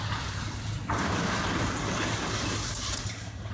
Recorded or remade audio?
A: remade